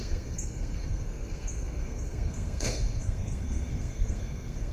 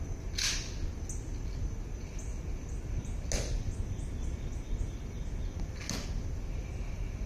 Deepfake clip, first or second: first